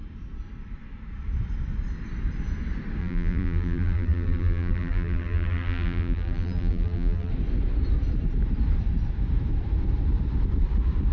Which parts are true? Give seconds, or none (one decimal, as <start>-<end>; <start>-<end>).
0.0-3.0; 7.3-11.1